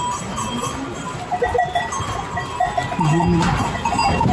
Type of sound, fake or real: real